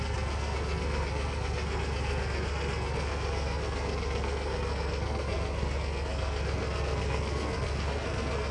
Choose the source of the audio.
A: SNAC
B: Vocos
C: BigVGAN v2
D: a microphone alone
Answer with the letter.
A